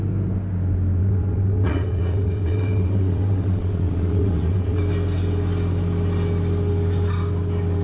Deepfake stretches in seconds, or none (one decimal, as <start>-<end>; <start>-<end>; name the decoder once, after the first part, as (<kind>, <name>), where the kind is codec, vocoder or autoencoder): 1.0-4.8 (vocoder, WaveNeXt)